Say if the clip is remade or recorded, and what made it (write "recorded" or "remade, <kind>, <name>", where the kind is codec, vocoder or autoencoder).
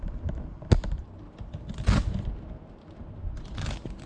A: recorded